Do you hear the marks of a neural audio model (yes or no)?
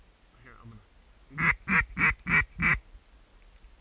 no